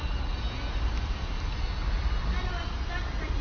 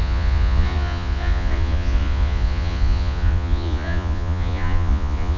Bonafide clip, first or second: first